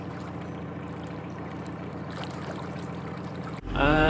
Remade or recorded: remade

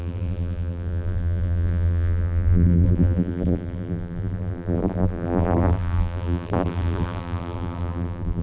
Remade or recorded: remade